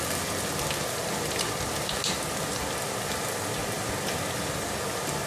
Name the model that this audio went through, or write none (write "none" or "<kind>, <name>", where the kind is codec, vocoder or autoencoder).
none